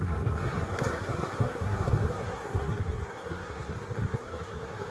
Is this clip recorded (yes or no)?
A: no